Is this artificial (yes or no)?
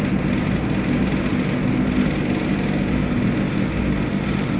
no